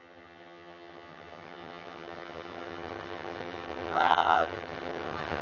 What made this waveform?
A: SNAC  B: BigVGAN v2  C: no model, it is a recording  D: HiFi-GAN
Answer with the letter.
D